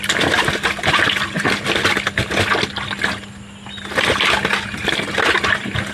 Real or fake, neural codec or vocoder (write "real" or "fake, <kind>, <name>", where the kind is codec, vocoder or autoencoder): real